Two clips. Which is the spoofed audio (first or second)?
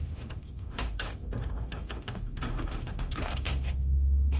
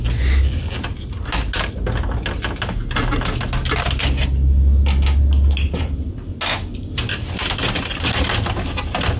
first